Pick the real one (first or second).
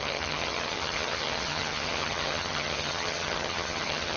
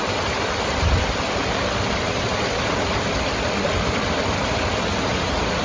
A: second